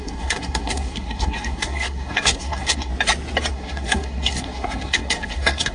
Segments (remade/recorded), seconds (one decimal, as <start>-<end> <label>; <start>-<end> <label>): 0.0-2.9 remade; 2.9-3.5 recorded; 3.5-5.7 remade